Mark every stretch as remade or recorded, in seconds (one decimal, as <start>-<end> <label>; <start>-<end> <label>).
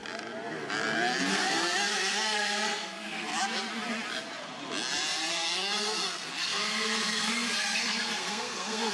0.0-1.3 recorded; 1.3-3.3 remade; 3.3-5.3 recorded; 5.3-8.9 remade